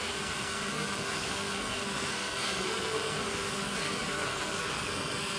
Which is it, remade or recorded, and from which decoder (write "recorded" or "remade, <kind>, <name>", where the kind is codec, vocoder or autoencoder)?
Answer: remade, codec, SNAC